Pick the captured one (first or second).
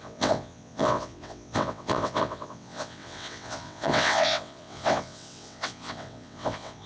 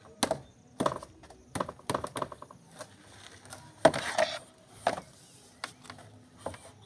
second